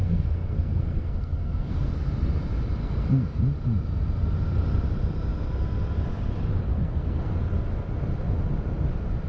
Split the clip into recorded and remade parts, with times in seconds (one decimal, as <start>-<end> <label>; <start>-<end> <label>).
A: 0.0-1.9 remade; 1.9-2.8 recorded; 2.8-3.4 remade; 3.4-6.7 recorded; 6.7-7.4 remade; 7.4-9.3 recorded